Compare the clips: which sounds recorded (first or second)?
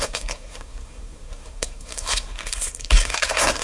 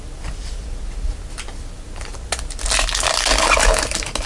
second